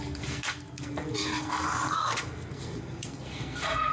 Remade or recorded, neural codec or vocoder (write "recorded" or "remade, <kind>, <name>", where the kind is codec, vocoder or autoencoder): remade, codec, SNAC